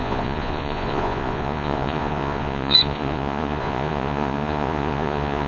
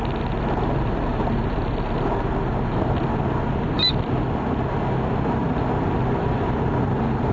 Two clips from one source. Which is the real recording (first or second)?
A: second